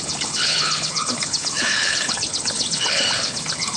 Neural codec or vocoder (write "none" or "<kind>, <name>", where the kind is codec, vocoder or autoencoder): codec, HILCodec